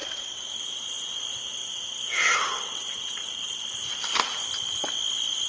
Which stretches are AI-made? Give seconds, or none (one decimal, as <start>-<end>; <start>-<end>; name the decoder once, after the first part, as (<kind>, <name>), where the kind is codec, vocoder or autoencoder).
0.0-0.6 (vocoder, WaveNeXt); 1.6-3.6